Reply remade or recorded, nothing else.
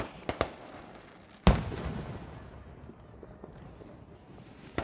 recorded